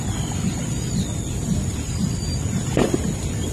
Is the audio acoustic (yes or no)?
yes